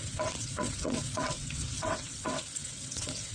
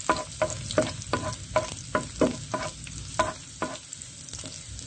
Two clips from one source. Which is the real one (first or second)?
second